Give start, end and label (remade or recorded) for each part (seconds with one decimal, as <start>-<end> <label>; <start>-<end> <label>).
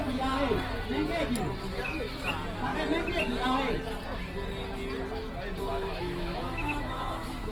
0.0-5.7 recorded; 5.7-7.5 remade